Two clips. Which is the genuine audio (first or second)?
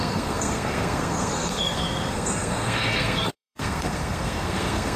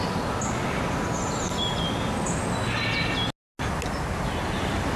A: second